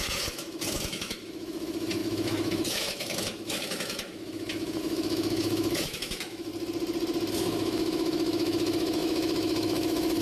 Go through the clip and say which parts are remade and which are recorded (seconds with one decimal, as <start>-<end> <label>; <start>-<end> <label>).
0.0-6.5 remade; 6.5-7.3 recorded; 7.3-10.2 remade